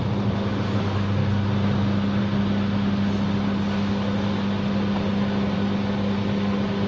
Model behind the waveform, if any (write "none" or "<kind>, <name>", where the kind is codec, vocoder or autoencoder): none